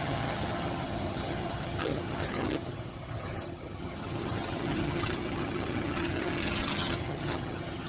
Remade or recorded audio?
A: remade